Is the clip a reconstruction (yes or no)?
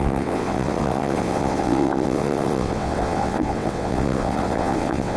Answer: yes